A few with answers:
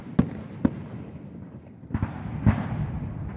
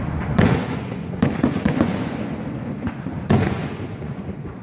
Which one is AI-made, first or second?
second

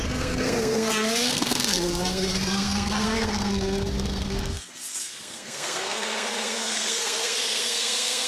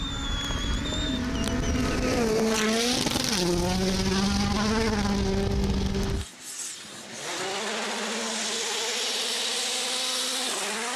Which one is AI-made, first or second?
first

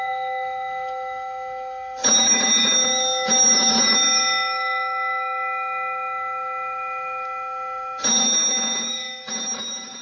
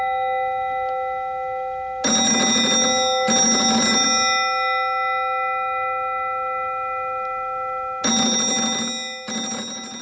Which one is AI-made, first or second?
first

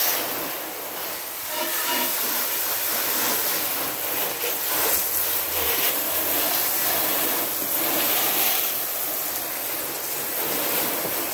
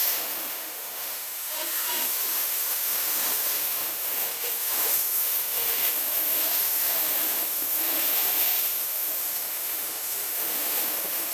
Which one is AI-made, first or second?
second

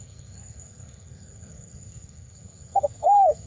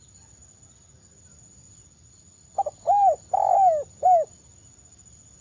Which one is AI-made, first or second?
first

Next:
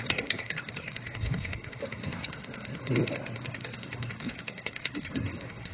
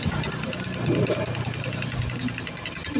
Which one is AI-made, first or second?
first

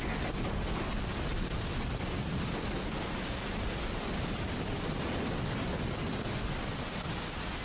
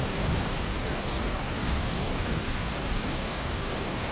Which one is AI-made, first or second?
second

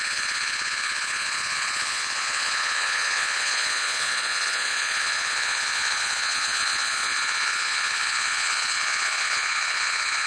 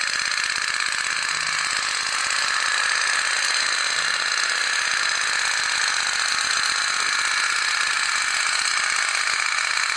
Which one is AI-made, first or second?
first